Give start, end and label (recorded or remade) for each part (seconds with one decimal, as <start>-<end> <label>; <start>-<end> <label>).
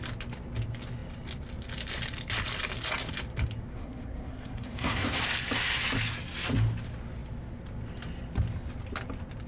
0.0-3.7 recorded; 3.7-5.2 remade; 5.2-9.5 recorded